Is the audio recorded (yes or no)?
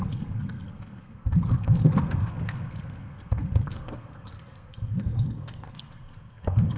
no